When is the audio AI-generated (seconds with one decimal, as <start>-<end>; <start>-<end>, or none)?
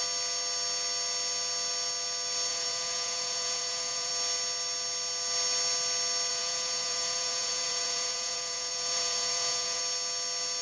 2.5-4.1; 6.3-9.8